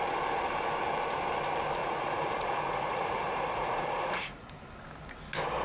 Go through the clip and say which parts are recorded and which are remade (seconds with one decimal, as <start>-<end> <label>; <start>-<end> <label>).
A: 0.0-1.8 recorded; 1.8-4.5 remade; 4.5-5.6 recorded

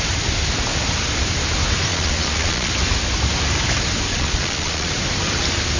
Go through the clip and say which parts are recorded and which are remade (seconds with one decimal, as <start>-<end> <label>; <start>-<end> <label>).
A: 0.0-1.9 recorded; 1.9-2.7 remade; 2.7-4.1 recorded; 4.1-4.9 remade; 4.9-5.8 recorded

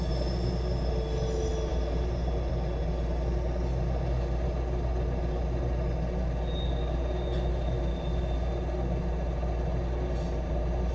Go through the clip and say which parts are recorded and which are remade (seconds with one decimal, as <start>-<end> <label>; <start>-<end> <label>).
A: 0.0-10.9 recorded

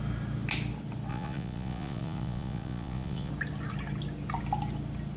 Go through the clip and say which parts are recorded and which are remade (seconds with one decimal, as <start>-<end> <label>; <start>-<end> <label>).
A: 0.0-1.1 recorded; 1.1-3.3 remade; 3.3-5.2 recorded

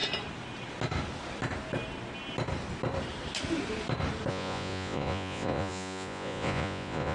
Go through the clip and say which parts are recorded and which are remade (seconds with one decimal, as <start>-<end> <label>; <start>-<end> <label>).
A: 0.0-4.3 recorded; 4.3-7.1 remade

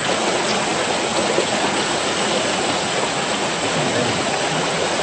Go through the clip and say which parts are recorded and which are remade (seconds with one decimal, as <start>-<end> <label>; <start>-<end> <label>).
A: 0.0-5.0 remade